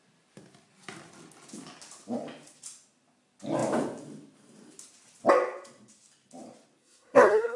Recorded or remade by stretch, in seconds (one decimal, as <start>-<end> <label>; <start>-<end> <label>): 0.0-6.8 recorded; 6.8-7.6 remade